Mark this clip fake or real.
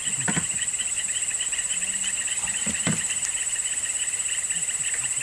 real